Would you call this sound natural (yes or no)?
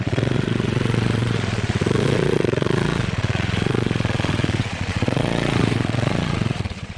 no